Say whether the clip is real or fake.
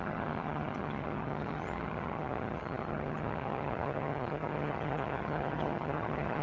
fake